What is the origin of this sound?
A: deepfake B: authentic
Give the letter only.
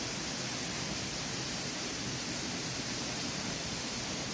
A